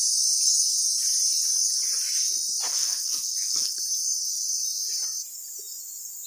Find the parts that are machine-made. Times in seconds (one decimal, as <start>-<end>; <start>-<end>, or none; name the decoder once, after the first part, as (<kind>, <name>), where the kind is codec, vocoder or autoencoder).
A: 2.7-3.8 (codec, SNAC)